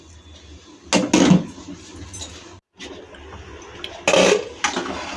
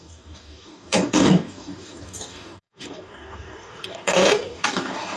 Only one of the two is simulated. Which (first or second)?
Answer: second